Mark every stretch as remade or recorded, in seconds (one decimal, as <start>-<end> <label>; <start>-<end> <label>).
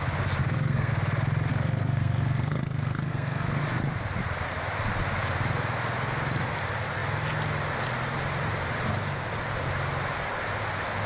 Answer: 0.0-0.4 recorded; 0.4-0.9 remade; 0.9-1.5 recorded; 1.5-3.6 remade; 3.6-11.1 recorded